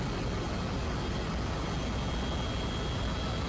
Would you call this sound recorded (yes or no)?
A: yes